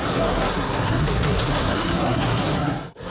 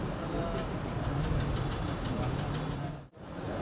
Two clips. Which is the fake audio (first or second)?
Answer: first